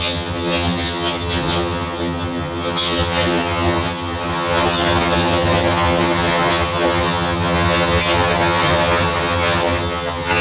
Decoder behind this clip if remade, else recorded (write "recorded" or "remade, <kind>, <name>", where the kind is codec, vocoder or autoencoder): remade, vocoder, HiFi-GAN